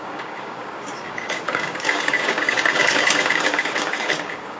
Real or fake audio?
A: fake